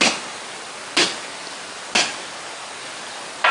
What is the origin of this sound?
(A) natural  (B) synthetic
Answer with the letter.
A